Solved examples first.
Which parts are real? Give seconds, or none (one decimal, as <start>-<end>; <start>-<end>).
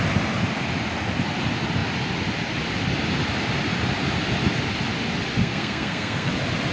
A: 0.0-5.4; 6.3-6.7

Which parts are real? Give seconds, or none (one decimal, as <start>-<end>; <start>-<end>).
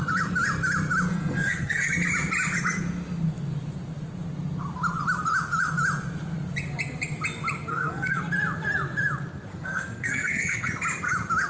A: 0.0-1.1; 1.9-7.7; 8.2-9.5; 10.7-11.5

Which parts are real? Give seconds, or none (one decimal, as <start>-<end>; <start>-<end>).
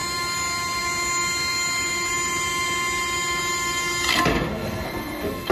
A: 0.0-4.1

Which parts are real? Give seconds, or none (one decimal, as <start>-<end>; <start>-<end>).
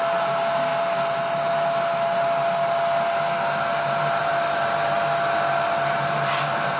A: 0.0-6.8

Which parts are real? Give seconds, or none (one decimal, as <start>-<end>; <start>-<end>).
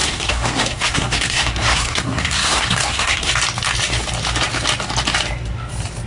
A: 3.3-6.1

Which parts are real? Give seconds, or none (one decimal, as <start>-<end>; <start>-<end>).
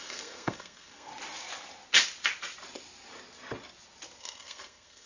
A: 1.1-4.2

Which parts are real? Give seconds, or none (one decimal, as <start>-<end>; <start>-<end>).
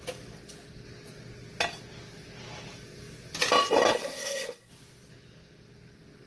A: 0.0-3.9; 4.7-6.3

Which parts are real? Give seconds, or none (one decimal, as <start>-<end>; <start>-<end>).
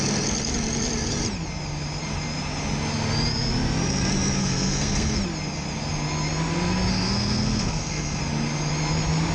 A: 0.0-4.4; 5.2-6.9; 8.2-9.3